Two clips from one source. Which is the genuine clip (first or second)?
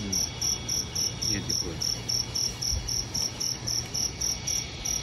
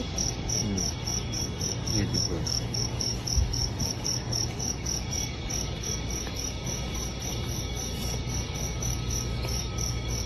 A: first